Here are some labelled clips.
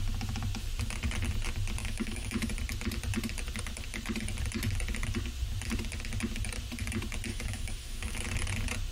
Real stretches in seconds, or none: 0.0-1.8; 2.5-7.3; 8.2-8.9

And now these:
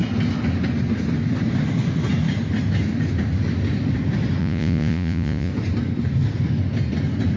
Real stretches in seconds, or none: 0.0-4.4; 5.5-7.4

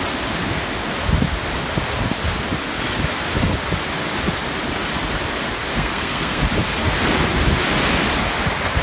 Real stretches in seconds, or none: 0.0-5.7; 6.4-8.8

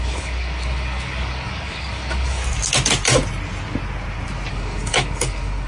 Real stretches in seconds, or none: 2.4-4.5

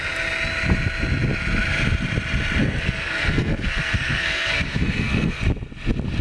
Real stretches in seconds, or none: 0.0-2.6; 5.4-6.2

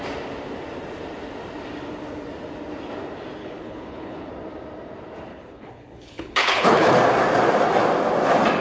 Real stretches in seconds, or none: 0.0-3.4; 4.3-5.3; 6.9-8.6